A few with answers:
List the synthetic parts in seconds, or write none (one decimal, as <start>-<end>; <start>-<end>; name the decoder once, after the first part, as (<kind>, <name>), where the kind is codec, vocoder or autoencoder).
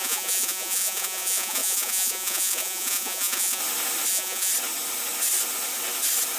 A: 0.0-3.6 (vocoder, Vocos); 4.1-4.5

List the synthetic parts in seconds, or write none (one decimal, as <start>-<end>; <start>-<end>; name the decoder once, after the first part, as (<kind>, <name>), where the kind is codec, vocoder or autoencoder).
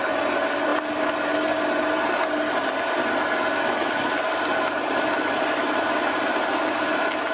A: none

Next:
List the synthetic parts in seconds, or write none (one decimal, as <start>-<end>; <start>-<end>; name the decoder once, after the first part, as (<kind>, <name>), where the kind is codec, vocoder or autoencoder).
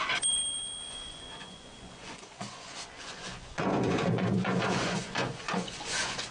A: 0.0-0.4 (vocoder, Vocos); 0.9-6.3